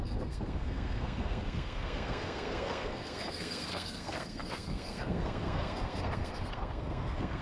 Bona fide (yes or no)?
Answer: no